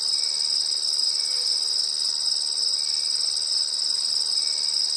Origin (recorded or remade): recorded